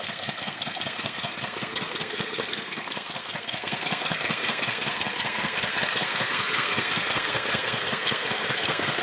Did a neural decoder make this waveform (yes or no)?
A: yes